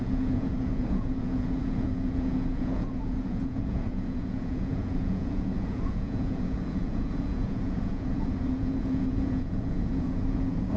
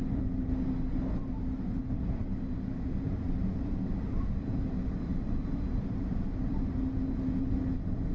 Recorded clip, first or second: second